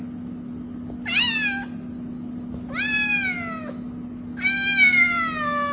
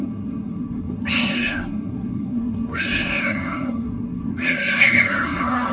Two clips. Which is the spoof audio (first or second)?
second